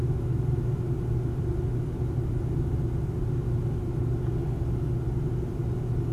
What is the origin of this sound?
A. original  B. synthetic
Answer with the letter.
A